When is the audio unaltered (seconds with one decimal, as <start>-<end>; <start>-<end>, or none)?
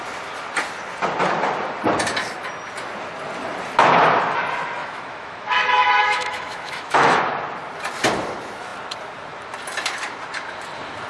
0.0-4.8; 7.2-11.1